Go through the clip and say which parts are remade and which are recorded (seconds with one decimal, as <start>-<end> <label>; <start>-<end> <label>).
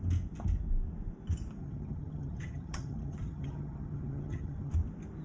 0.0-1.6 recorded; 1.6-4.7 remade; 4.7-5.2 recorded